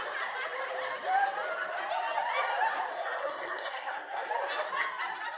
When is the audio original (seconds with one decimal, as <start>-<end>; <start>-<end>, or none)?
0.0-2.9; 4.3-5.4